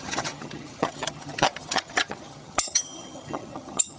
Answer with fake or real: fake